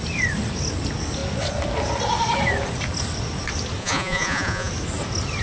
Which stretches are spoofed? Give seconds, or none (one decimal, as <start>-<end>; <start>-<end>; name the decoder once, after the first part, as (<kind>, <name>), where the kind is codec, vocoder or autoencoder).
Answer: 3.8-4.7 (vocoder, Vocos)